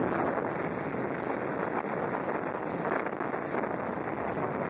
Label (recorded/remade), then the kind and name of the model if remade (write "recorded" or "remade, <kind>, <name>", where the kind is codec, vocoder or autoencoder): recorded